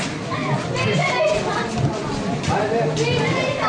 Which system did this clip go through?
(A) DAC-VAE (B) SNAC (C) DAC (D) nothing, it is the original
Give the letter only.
D